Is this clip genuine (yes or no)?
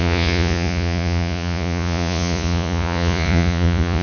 no